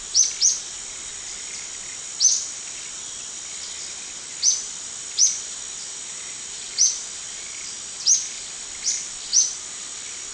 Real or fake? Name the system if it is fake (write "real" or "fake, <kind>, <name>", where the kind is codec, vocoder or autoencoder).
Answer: real